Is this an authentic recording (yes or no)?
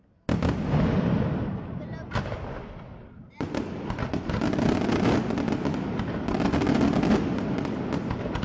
yes